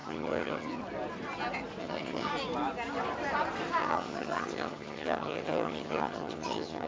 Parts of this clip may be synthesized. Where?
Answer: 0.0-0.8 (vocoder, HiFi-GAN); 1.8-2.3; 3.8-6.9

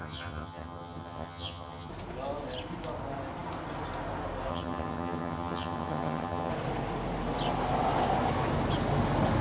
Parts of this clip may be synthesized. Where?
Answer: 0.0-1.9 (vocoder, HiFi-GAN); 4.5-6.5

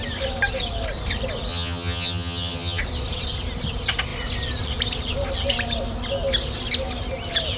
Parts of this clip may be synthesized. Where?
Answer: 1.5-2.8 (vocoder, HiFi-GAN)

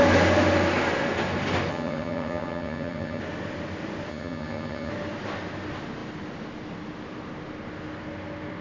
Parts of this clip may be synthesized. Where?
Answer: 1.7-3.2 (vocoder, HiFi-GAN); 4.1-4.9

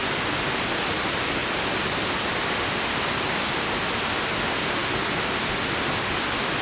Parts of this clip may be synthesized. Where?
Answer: none

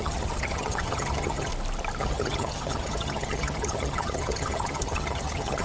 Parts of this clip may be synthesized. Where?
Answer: 0.0-1.5 (vocoder, HiFi-GAN); 2.0-5.6